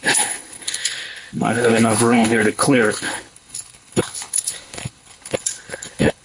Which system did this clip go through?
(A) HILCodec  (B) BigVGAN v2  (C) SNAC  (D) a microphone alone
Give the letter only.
A